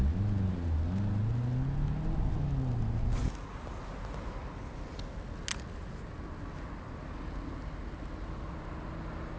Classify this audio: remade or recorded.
recorded